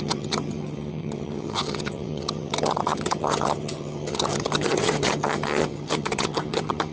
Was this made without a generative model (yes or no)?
no